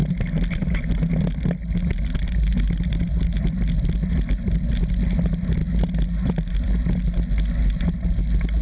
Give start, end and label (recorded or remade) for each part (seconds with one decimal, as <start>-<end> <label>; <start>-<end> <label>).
0.0-8.6 recorded